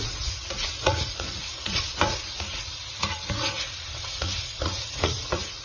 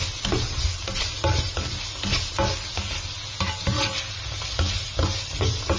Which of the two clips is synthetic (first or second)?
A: first